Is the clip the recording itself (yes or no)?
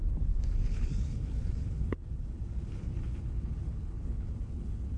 no